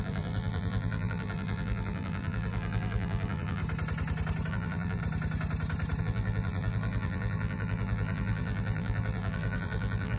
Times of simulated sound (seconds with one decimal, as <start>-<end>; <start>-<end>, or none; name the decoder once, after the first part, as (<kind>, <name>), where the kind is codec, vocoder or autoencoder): 0.0-3.6 (vocoder, BigVGAN v2); 4.5-5.0; 6.0-10.2